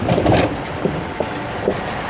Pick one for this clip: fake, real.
real